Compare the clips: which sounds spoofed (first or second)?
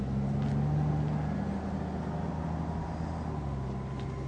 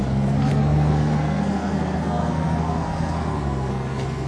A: second